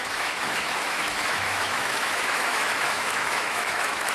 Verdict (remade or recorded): remade